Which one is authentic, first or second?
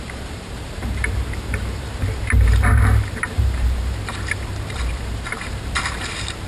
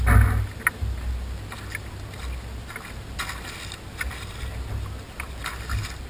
second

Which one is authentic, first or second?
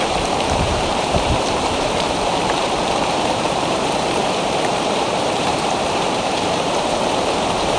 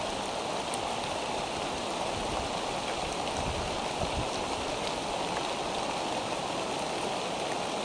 second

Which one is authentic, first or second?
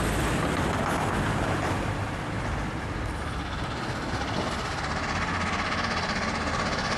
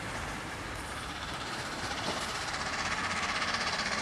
first